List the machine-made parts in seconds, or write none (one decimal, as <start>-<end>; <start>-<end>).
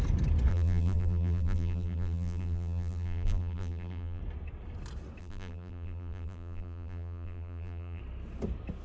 0.5-4.2; 5.2-8.0